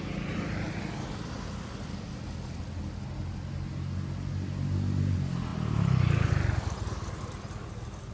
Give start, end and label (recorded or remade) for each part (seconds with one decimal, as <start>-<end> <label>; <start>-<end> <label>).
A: 0.0-8.1 recorded